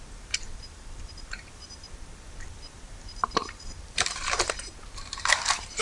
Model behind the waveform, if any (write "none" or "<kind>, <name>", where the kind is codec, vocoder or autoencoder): vocoder, BigVGAN v2